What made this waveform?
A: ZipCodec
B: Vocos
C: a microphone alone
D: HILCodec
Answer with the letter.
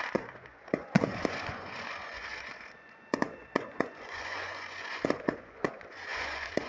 B